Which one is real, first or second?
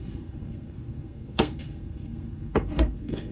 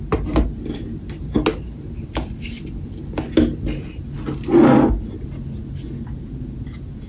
second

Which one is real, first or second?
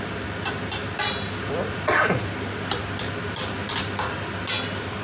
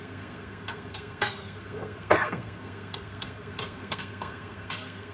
first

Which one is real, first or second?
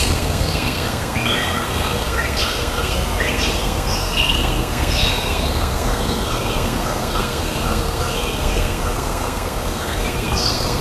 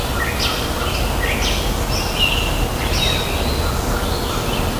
second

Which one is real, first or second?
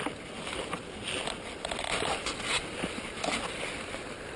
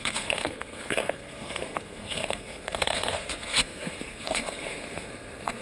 first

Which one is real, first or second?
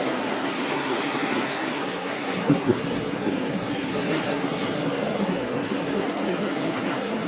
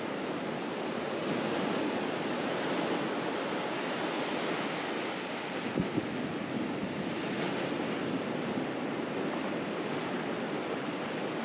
second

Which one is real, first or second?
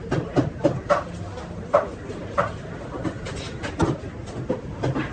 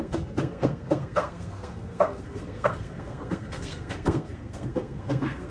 first